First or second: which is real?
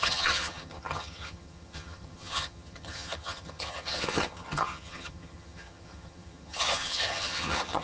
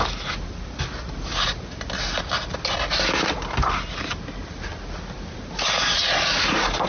second